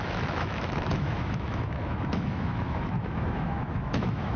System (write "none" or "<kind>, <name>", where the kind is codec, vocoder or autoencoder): autoencoder, DAC-VAE